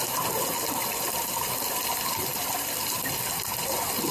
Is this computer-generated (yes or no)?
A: no